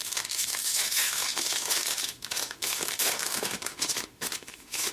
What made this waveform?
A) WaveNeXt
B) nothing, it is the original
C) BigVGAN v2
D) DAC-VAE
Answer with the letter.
D